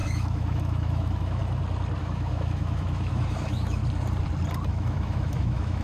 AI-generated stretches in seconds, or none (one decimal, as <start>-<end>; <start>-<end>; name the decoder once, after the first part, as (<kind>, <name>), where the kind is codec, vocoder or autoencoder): 0.0-1.4 (autoencoder, DAC-VAE); 2.0-3.8; 4.7-5.8